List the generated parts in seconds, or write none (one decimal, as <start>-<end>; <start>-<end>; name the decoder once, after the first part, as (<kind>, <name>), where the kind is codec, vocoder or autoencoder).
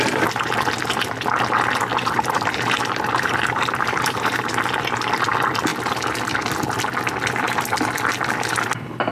1.9-4.6 (vocoder, BigVGAN v2)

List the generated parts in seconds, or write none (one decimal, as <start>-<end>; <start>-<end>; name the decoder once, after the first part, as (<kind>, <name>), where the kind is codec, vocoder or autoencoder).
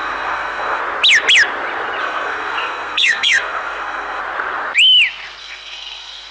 0.0-0.8 (codec, SNAC); 2.0-4.2; 5.4-6.3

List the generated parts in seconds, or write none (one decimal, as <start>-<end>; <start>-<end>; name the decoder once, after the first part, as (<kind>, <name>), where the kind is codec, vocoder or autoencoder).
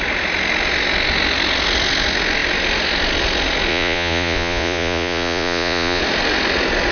3.7-6.0 (vocoder, Vocos)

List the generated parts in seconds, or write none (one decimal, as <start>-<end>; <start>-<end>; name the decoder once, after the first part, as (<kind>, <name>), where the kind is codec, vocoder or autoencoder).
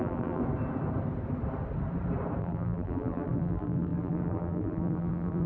0.0-0.4 (vocoder, BigVGAN v2); 2.4-5.5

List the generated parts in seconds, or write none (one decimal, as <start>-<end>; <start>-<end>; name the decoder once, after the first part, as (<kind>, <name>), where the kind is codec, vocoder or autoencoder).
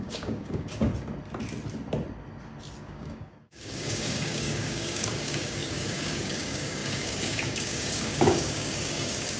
0.0-0.9 (codec, DAC); 2.8-9.4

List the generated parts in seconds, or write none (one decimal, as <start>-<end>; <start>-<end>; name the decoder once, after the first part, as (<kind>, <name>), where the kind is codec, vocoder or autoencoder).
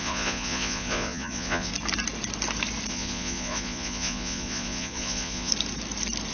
0.0-1.7 (vocoder, Vocos); 2.9-5.5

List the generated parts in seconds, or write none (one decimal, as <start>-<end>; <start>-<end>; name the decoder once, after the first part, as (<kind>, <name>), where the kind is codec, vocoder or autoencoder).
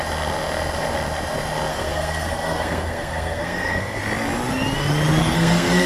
1.7-4.0 (codec, SNAC); 5.2-5.9